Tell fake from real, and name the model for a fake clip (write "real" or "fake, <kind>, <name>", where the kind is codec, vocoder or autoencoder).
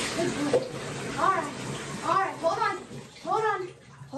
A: real